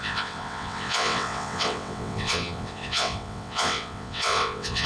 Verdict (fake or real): fake